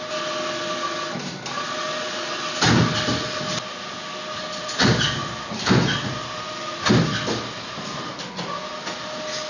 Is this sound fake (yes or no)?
no